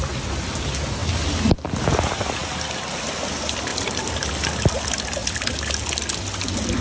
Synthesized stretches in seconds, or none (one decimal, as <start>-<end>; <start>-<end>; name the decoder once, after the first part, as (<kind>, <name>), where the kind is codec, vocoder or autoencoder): 3.7-4.3 (vocoder, BigVGAN v2)